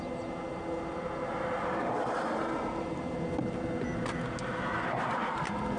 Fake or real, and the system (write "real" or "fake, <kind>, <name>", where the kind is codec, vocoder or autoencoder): real